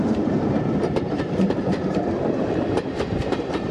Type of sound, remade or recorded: remade